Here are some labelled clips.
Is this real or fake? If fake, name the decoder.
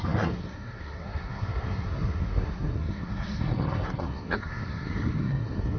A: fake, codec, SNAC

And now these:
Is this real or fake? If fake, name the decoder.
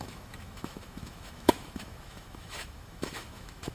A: fake, autoencoder, DAC-VAE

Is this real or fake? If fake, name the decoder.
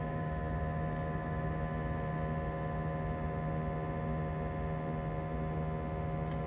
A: real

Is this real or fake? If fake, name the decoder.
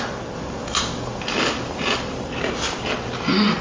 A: real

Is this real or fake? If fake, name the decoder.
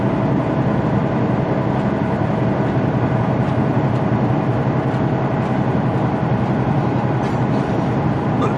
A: real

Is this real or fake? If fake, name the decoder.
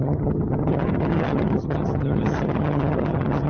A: fake, vocoder, HiFi-GAN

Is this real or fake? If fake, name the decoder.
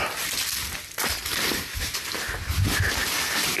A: real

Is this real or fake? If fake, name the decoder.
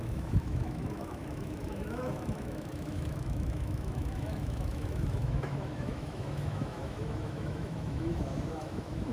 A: fake, autoencoder, DAC-VAE